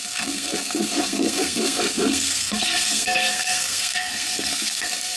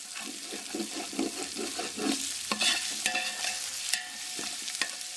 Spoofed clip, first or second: first